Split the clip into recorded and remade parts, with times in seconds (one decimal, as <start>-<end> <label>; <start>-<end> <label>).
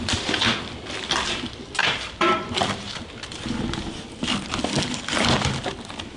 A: 0.0-1.8 recorded; 1.8-3.4 remade; 3.4-6.2 recorded